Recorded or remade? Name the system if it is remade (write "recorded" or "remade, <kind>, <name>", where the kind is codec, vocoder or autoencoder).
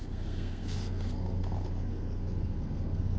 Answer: remade, codec, SNAC